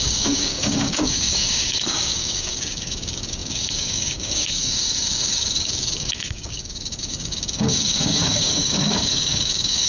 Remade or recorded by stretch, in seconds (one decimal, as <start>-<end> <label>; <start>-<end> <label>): 0.0-9.9 remade